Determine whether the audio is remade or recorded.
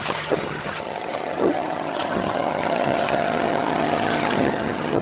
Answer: remade